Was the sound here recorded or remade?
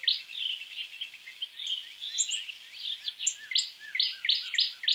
recorded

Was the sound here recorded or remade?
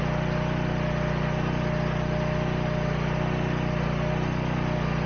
recorded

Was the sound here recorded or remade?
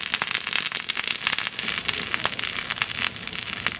recorded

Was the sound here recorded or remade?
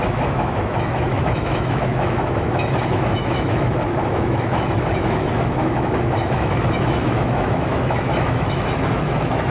remade